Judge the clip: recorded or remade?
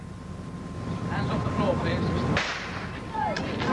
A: recorded